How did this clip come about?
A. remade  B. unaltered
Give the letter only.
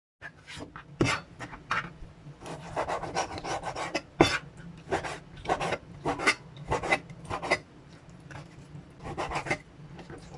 B